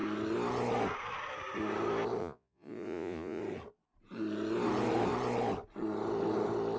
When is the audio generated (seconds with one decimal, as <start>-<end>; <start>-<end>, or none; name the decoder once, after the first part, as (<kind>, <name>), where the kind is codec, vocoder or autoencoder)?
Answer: 2.2-3.4 (vocoder, Vocos)